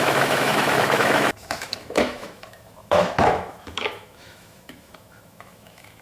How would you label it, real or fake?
fake